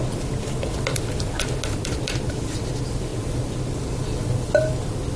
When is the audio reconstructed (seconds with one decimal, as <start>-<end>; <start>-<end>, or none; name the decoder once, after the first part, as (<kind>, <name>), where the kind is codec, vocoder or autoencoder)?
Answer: none

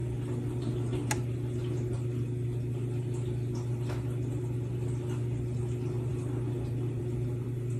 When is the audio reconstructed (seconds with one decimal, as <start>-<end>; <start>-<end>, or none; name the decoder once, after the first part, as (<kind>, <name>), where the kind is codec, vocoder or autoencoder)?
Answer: none

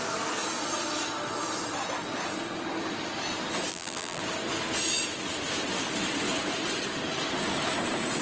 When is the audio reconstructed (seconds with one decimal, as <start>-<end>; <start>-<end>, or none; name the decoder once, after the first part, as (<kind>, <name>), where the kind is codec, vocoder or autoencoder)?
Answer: 3.7-4.2 (vocoder, BigVGAN v2)